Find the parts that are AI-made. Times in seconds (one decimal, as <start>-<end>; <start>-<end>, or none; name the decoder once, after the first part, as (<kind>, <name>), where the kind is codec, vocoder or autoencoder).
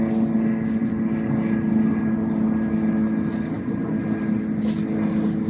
none